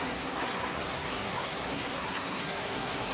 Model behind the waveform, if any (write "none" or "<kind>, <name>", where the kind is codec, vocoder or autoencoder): codec, SNAC